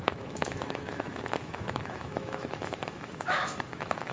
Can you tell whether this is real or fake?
fake